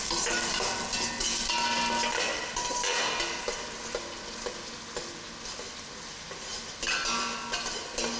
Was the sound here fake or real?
real